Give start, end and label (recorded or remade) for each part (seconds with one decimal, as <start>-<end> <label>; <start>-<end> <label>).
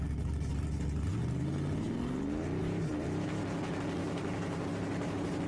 0.0-2.6 recorded; 2.6-3.4 remade; 3.4-4.0 recorded; 4.0-5.5 remade